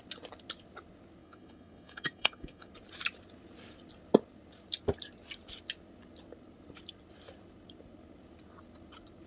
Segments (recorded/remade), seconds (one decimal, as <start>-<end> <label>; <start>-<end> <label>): 0.0-1.2 recorded; 1.2-2.7 remade; 2.7-9.3 recorded

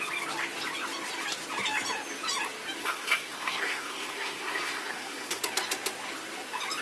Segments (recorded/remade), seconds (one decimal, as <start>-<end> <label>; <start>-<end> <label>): 0.0-2.8 recorded; 2.8-5.4 remade; 5.4-6.8 recorded

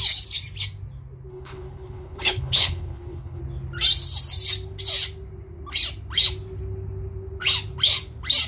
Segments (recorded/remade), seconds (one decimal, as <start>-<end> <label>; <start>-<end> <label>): 0.0-1.3 recorded; 1.3-3.4 remade; 3.4-8.5 recorded

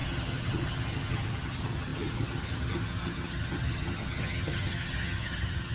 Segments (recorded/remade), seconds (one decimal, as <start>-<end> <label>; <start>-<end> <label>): 0.0-5.7 remade